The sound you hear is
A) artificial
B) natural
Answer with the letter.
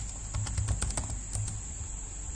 B